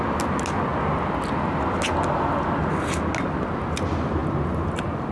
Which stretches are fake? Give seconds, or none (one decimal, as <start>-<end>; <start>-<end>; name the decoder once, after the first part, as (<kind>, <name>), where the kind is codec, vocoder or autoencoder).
none